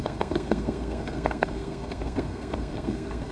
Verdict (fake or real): fake